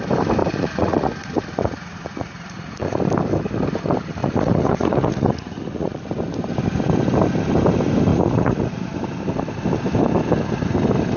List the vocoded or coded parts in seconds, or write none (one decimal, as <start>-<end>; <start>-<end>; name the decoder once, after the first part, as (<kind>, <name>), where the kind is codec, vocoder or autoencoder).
0.4-3.0 (vocoder, Vocos); 4.2-6.0; 8.1-8.8